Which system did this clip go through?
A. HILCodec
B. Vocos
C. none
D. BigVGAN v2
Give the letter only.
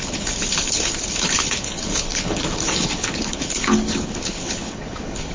A